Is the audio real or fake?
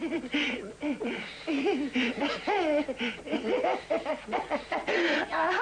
fake